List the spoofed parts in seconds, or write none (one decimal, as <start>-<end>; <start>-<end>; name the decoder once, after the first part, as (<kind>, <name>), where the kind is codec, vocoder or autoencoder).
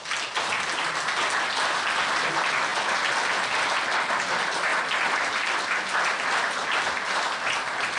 none